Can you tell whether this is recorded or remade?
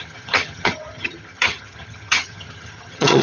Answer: remade